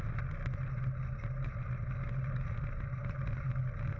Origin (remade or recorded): recorded